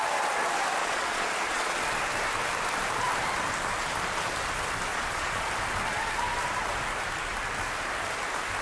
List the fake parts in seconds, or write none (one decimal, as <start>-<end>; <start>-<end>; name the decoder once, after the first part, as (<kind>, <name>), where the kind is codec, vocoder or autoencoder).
0.8-1.8 (vocoder, Vocos); 4.9-5.5